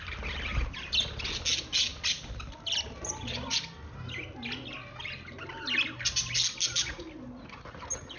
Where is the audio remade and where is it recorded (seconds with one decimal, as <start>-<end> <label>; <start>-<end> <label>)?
0.0-8.2 recorded